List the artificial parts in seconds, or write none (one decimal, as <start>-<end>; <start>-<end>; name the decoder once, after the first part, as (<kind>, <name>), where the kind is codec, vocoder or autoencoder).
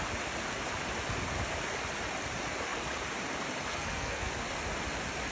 3.7-4.3 (codec, SNAC)